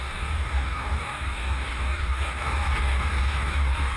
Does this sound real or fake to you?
fake